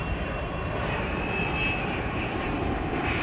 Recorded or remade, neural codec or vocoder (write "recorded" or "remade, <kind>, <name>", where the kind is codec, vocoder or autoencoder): recorded